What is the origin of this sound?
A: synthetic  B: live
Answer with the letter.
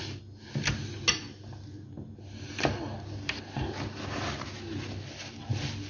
B